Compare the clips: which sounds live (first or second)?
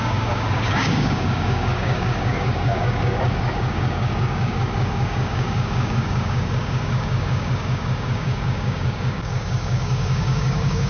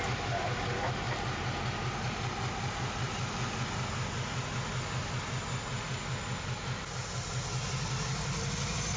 second